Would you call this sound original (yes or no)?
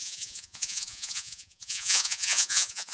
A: no